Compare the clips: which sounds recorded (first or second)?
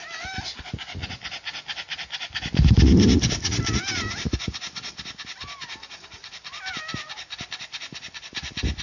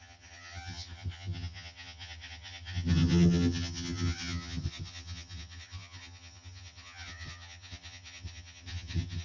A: first